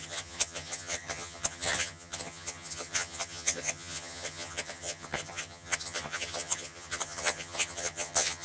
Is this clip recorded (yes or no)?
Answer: no